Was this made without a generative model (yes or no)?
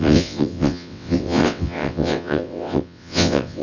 no